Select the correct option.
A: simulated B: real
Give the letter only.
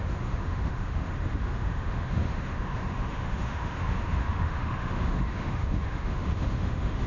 A